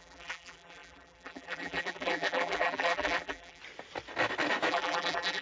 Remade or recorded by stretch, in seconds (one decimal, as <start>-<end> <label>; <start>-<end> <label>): 0.0-3.6 remade; 3.6-4.7 recorded; 4.7-5.4 remade